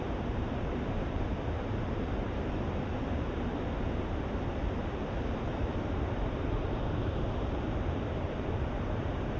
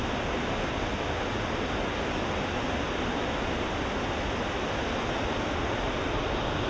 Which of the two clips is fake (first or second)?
first